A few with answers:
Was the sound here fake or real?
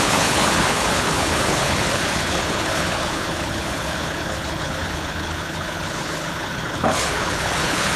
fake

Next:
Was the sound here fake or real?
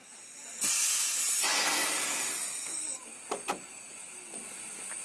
real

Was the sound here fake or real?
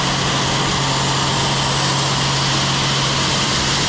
real